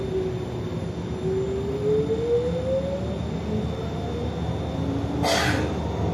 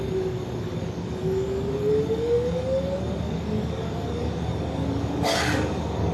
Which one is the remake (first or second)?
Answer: second